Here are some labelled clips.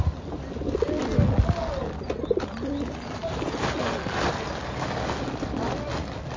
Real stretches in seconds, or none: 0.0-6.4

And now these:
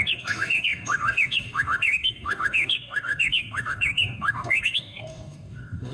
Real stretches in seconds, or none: none

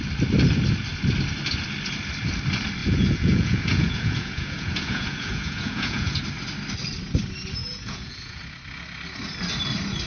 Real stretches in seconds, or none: 0.0-2.8; 6.2-7.6; 8.4-10.1

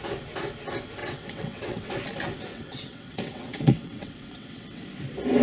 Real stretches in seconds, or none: 0.0-1.0; 1.9-2.5; 4.8-5.4

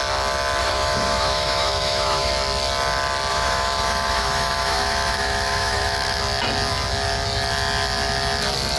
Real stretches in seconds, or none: 0.0-0.6; 2.3-3.3; 6.2-8.8

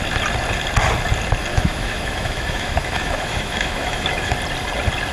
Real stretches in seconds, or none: 0.0-1.5; 4.3-5.1